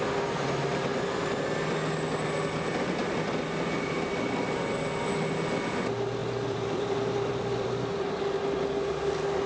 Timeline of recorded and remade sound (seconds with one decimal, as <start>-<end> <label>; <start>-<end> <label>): 0.0-6.2 recorded; 6.2-8.2 remade; 8.2-9.5 recorded